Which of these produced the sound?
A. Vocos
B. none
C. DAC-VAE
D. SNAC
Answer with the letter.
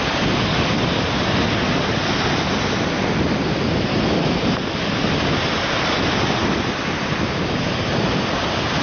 B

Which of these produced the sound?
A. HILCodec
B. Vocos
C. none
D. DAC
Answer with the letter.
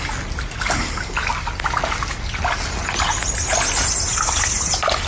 C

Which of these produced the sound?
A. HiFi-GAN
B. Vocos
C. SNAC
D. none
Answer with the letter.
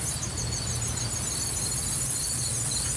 D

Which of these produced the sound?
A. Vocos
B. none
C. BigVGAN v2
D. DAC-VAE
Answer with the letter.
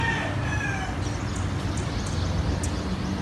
B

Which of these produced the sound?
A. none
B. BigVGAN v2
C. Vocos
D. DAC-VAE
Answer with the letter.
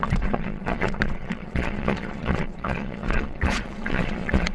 C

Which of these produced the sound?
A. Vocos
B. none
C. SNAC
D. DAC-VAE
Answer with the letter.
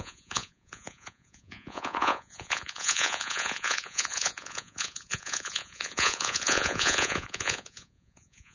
A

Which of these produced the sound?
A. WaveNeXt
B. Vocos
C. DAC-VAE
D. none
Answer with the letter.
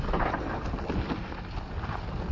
D